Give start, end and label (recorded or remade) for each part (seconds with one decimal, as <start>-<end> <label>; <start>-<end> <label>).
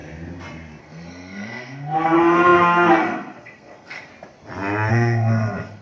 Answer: 0.0-0.8 recorded; 0.8-4.1 remade; 4.1-4.9 recorded; 4.9-5.8 remade